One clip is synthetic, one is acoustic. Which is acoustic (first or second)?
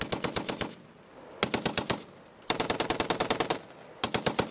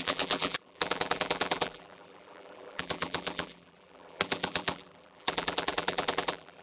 first